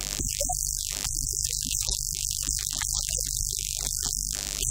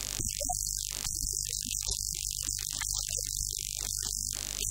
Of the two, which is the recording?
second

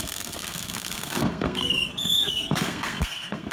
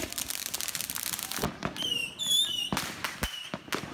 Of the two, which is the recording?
second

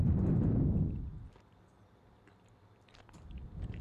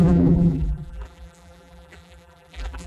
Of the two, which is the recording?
first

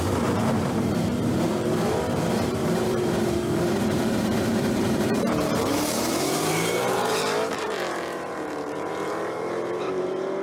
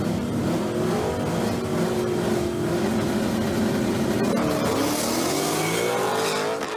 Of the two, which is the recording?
second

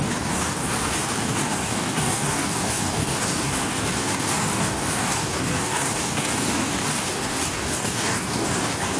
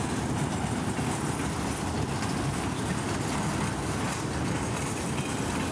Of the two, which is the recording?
second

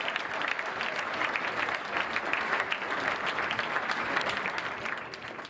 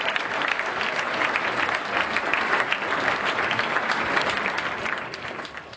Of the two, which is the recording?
first